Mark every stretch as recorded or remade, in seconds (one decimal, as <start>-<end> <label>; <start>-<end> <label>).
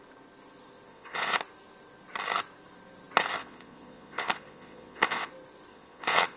0.0-0.9 recorded; 0.9-1.4 remade; 1.4-3.4 recorded; 3.4-5.3 remade; 5.3-5.7 recorded; 5.7-6.4 remade